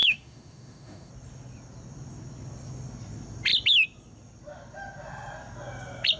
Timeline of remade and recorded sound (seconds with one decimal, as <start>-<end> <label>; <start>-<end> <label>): 0.0-1.1 remade; 1.1-6.2 recorded